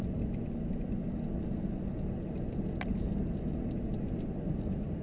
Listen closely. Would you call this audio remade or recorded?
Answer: recorded